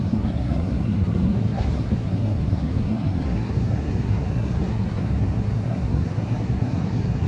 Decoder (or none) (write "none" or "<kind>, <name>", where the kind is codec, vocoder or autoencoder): codec, SNAC